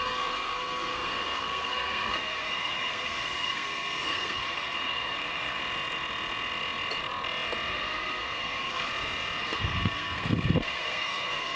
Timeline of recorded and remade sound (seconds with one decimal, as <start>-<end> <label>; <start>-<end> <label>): 0.0-5.6 remade; 5.6-7.7 recorded; 7.7-8.9 remade; 8.9-9.4 recorded; 9.4-11.6 remade